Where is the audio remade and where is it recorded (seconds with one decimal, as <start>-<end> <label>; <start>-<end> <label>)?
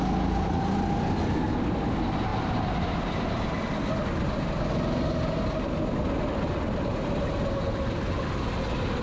0.0-9.0 recorded